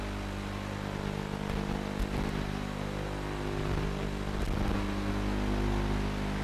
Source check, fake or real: real